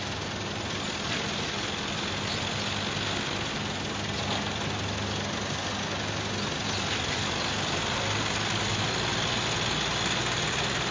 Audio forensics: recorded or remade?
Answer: recorded